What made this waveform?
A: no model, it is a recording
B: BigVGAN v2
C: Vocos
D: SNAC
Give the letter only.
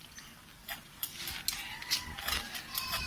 A